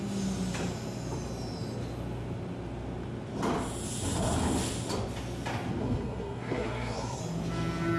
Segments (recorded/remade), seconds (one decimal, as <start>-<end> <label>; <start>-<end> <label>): 0.0-5.8 recorded; 5.8-7.2 remade; 7.2-8.0 recorded